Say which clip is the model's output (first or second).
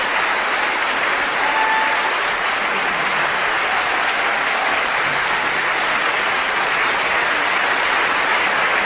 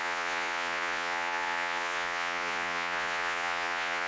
second